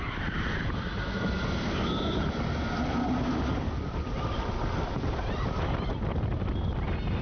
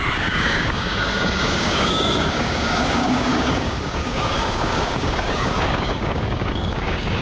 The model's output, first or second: second